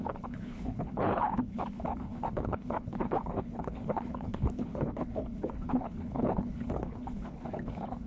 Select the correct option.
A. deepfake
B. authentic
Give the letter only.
A